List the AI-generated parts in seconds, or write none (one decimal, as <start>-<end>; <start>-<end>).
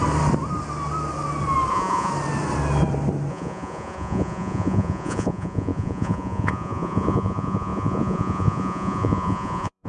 1.7-2.1; 3.3-9.9